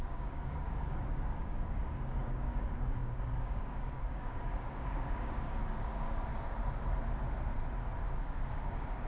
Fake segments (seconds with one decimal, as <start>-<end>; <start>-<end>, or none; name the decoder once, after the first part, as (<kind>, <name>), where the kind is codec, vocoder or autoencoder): 0.0-6.3 (codec, DAC); 8.2-9.1